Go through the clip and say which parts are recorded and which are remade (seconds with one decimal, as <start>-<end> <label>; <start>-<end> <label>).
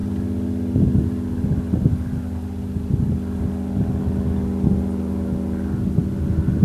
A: 0.0-6.6 recorded